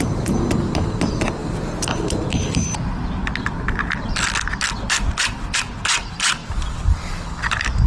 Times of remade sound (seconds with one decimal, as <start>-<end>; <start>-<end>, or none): 6.4-7.3